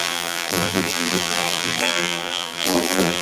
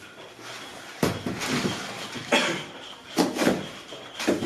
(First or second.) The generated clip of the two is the first